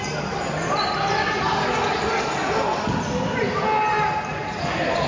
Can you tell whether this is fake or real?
real